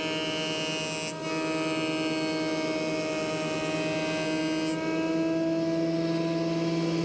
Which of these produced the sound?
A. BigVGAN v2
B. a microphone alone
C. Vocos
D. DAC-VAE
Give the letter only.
B